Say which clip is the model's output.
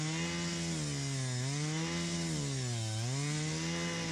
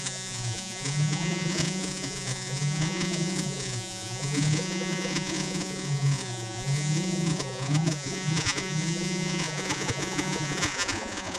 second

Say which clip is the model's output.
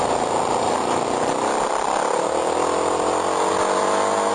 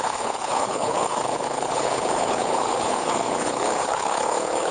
second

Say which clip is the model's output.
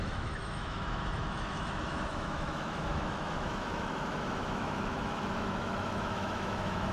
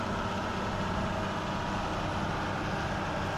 first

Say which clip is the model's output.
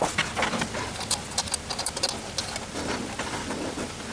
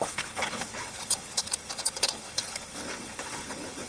second